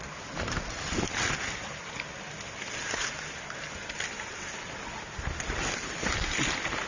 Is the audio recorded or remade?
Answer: recorded